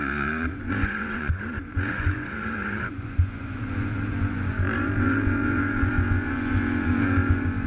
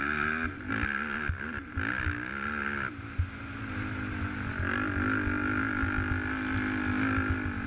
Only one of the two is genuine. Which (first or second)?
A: second